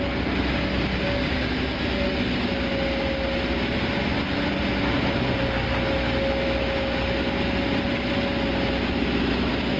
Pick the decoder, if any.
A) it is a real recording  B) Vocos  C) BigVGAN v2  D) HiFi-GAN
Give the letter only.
C